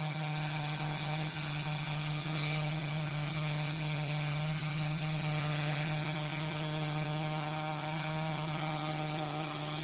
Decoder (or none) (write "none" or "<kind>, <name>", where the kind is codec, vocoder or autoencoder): vocoder, HiFi-GAN